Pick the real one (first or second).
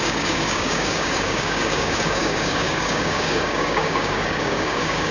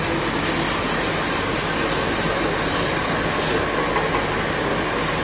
second